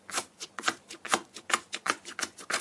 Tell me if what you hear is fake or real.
fake